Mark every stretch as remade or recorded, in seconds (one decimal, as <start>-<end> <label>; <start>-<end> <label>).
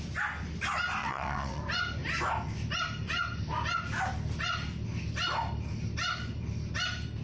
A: 0.0-1.0 recorded; 1.0-1.6 remade; 1.6-7.2 recorded